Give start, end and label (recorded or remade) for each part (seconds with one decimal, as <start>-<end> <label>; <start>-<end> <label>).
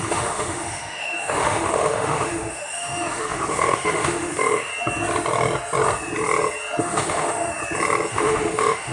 0.0-4.7 remade; 4.7-6.8 recorded; 6.8-7.6 remade; 7.6-8.1 recorded; 8.1-8.9 remade